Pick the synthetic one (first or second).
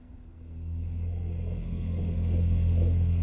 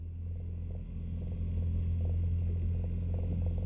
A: first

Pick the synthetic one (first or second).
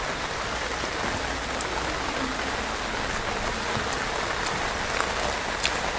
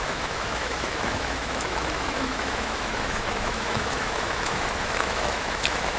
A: second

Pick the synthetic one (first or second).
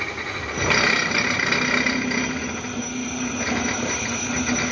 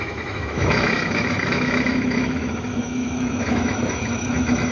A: second